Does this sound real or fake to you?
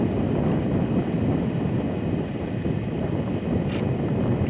real